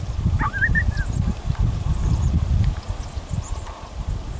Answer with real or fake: real